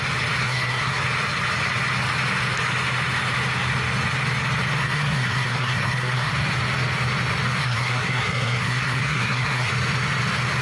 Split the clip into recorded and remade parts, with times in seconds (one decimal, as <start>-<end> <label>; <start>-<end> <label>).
0.0-0.4 recorded; 0.4-1.0 remade; 1.0-4.8 recorded; 4.8-6.3 remade; 6.3-7.6 recorded; 7.6-9.7 remade; 9.7-10.6 recorded

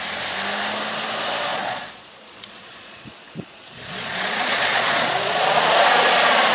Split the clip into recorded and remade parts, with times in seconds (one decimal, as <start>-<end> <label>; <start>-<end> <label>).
0.0-1.5 recorded; 1.5-5.4 remade; 5.4-6.5 recorded